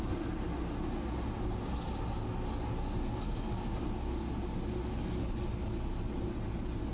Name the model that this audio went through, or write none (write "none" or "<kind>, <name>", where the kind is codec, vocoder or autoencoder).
none